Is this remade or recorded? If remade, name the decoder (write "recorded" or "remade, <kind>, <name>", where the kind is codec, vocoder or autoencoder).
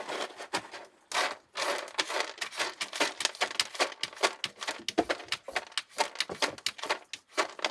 recorded